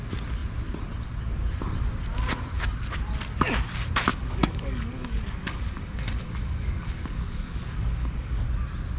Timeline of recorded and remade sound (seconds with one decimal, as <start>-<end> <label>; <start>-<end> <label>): 0.0-4.1 recorded; 4.1-8.4 remade; 8.4-9.0 recorded